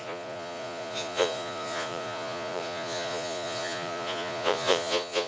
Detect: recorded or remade remade